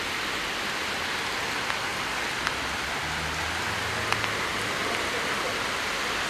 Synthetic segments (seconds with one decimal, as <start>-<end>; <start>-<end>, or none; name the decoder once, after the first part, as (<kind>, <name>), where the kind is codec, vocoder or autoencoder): none